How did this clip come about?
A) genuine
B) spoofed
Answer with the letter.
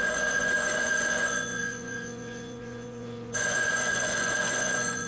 B